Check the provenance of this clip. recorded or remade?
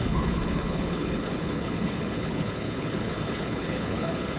remade